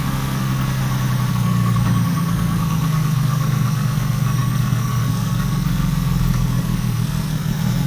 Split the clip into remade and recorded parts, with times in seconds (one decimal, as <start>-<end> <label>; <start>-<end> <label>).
0.0-0.8 remade; 0.8-1.3 recorded; 1.3-7.9 remade